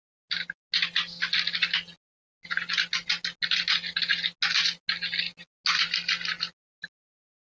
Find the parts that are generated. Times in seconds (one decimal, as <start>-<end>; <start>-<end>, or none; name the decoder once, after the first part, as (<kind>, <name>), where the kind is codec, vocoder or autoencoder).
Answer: none